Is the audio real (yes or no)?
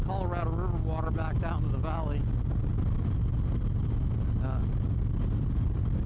yes